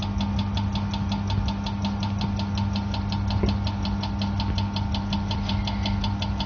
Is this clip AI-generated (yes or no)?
no